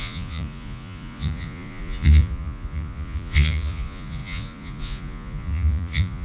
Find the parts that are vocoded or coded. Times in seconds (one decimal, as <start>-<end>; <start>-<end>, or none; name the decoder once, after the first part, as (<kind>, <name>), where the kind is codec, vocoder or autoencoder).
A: 0.0-6.2 (vocoder, Vocos)